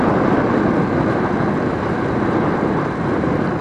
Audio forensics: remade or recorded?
recorded